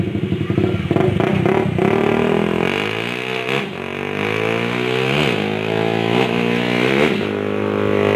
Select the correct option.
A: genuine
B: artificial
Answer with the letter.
A